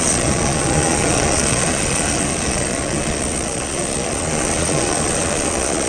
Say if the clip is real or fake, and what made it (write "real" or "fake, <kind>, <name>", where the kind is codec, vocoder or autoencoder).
fake, vocoder, Vocos